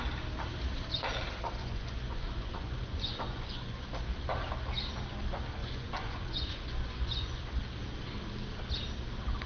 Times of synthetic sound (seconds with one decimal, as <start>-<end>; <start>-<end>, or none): 1.6-3.9; 5.6-7.4